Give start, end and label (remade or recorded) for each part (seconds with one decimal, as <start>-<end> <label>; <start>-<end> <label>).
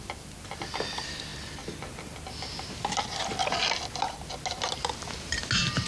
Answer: 0.0-5.9 recorded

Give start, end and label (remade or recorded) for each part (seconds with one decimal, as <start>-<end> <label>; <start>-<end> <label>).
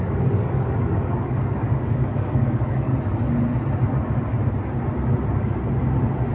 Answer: 0.0-2.9 remade; 2.9-6.3 recorded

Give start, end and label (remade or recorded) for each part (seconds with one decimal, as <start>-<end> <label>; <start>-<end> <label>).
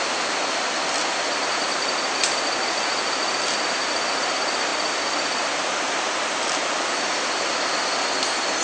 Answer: 0.0-8.6 recorded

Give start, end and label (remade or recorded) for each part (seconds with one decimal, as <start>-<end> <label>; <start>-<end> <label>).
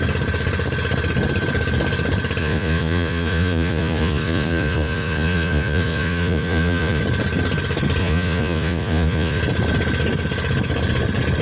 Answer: 0.0-2.4 recorded; 2.4-7.0 remade; 7.0-8.0 recorded; 8.0-9.4 remade; 9.4-11.4 recorded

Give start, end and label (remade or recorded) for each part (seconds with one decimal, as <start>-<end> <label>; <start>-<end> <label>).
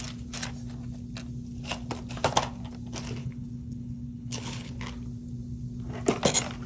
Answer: 0.0-3.2 recorded; 3.2-4.7 remade; 4.7-6.7 recorded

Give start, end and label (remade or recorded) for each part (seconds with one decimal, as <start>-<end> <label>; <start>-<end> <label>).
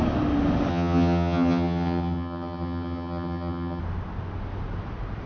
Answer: 0.0-0.7 recorded; 0.7-3.8 remade; 3.8-5.3 recorded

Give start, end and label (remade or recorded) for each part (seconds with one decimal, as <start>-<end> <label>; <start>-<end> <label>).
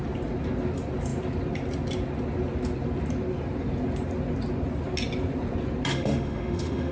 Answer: 0.0-5.9 recorded; 5.9-6.9 remade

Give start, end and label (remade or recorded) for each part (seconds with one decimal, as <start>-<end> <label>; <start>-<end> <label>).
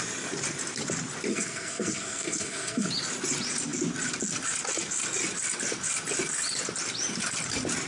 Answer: 0.0-1.3 recorded; 1.3-2.9 remade; 2.9-7.9 recorded